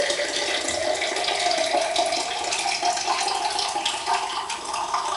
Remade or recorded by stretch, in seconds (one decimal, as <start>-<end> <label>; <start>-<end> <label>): 0.0-5.2 recorded

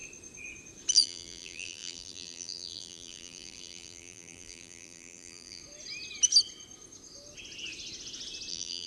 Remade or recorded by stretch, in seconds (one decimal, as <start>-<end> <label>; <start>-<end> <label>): 0.0-0.9 recorded; 0.9-5.6 remade; 5.6-8.5 recorded; 8.5-8.9 remade

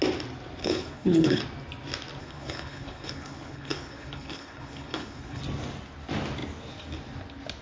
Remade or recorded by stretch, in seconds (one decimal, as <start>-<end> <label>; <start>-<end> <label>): 0.0-0.6 recorded; 0.6-1.4 remade; 1.4-2.2 recorded; 2.2-5.4 remade; 5.4-7.6 recorded

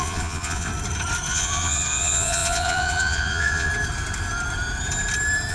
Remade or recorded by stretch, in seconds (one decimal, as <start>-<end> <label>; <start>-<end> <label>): 0.0-0.7 remade; 0.7-1.3 recorded; 1.3-3.7 remade; 3.7-5.5 recorded

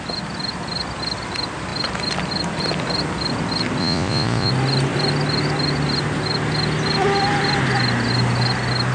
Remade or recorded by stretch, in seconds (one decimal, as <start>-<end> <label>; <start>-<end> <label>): 0.0-3.8 recorded; 3.8-4.5 remade; 4.5-8.9 recorded

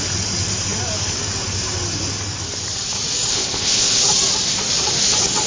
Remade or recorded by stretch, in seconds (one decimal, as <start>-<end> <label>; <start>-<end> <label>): 0.0-3.3 recorded; 3.3-4.0 remade; 4.0-5.5 recorded

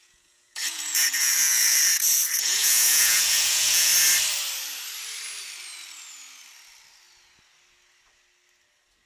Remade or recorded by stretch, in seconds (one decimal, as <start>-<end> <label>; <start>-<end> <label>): 0.0-3.9 remade; 3.9-9.1 recorded

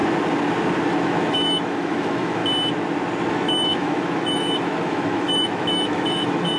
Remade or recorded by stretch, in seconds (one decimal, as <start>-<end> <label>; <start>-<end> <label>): 0.0-1.0 recorded; 1.0-2.4 remade; 2.4-3.3 recorded; 3.3-6.6 remade